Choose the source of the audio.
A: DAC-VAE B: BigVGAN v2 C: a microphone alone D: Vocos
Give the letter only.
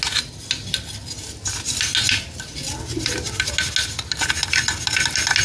C